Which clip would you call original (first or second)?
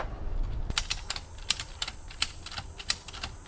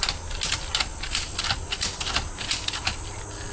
second